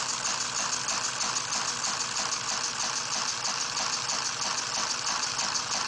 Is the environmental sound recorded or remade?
recorded